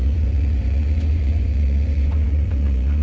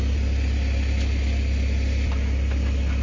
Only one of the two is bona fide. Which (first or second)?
second